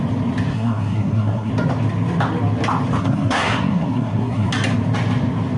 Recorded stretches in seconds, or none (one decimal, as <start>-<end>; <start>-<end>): 0.0-0.5; 1.5-3.0; 4.5-5.6